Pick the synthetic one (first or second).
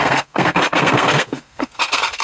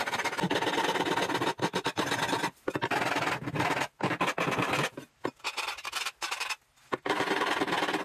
first